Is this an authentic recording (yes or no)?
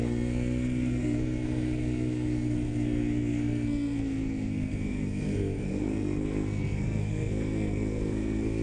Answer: no